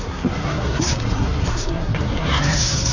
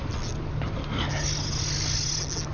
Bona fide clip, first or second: second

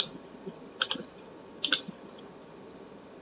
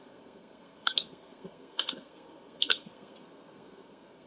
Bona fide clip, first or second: first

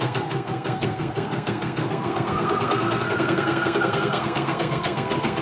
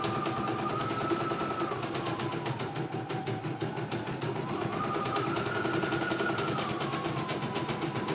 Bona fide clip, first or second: second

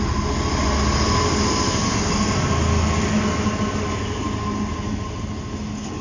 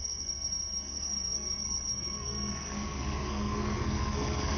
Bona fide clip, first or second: first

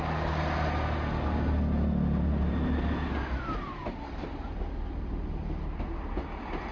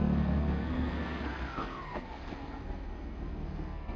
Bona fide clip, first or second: first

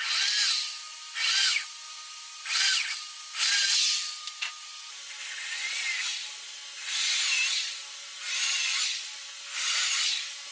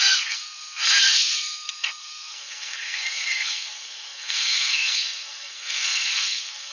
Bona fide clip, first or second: first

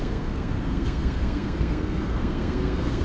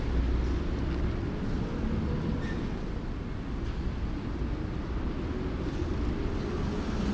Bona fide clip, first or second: second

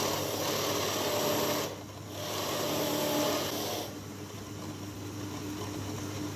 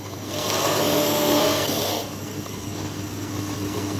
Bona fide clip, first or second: first